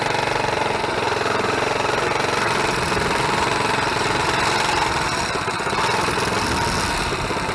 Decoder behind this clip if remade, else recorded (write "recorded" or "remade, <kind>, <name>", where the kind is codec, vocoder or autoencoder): recorded